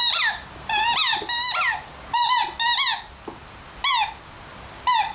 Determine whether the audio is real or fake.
real